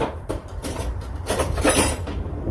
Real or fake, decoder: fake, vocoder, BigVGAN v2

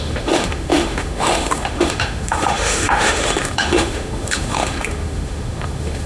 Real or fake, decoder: fake, autoencoder, DAC-VAE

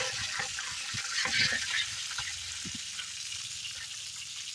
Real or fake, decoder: real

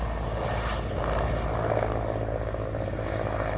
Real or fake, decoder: real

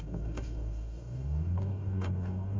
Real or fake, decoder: fake, codec, DAC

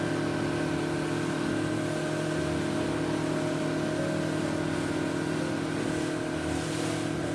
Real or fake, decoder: real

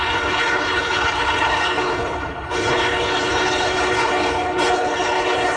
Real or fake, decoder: fake, codec, HILCodec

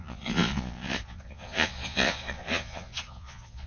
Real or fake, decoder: fake, vocoder, Vocos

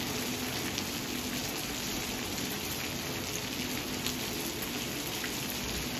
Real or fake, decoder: real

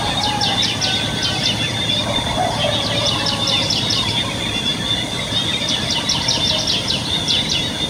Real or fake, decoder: real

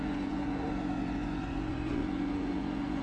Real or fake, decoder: fake, vocoder, Vocos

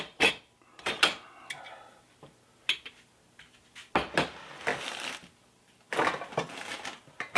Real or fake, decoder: real